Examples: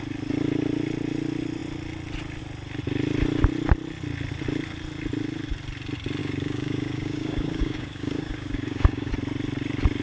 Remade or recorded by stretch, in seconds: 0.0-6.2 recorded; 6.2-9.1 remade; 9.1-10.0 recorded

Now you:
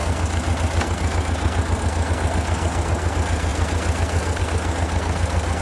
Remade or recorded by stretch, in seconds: 0.0-5.6 remade

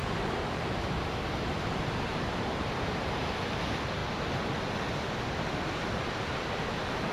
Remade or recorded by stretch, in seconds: 0.0-0.8 remade; 0.8-2.1 recorded; 2.1-3.3 remade; 3.3-7.1 recorded

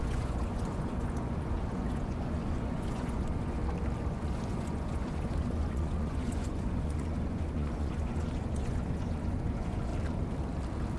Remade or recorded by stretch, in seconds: 0.0-3.6 remade; 3.6-4.1 recorded; 4.1-9.9 remade; 9.9-11.0 recorded